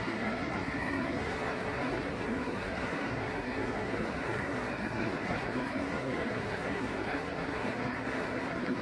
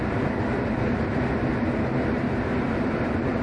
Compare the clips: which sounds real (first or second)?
second